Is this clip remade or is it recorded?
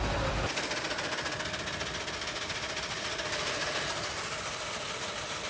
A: recorded